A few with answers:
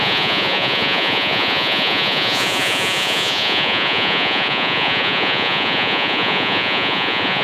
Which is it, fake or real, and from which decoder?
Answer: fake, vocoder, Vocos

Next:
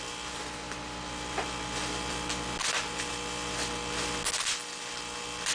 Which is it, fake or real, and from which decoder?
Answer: real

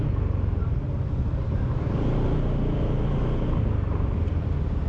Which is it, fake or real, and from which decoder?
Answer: real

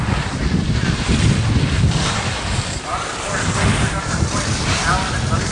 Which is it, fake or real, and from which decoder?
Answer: real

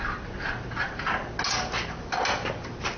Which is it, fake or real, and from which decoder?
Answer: real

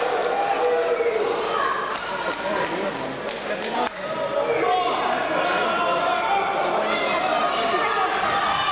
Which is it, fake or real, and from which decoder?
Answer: real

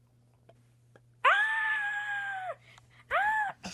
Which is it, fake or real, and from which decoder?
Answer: real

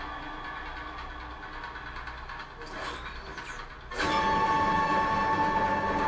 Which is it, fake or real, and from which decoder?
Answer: real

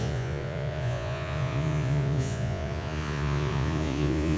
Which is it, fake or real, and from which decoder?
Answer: fake, vocoder, Vocos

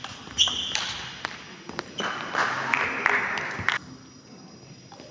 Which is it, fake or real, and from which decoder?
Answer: real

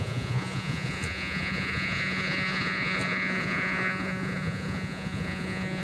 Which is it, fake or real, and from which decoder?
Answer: fake, vocoder, Vocos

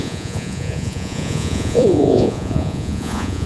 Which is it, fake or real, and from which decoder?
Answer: fake, vocoder, Vocos